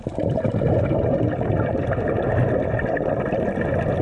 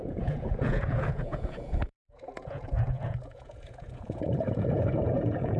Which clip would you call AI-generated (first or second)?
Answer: second